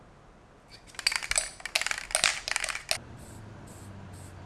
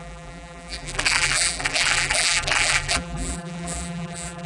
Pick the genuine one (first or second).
first